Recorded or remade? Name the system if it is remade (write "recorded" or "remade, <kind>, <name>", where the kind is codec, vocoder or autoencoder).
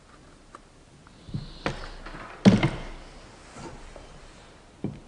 recorded